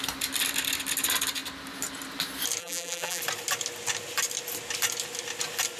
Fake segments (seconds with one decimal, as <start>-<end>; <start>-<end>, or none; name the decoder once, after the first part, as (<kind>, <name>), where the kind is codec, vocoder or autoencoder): 2.6-3.2 (vocoder, BigVGAN v2)